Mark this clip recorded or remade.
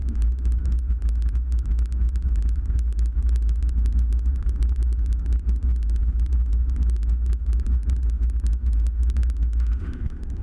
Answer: remade